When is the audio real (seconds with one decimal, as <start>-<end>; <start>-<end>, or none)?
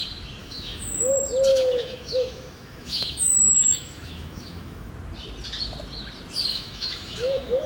0.0-0.4; 1.1-1.5; 4.9-6.5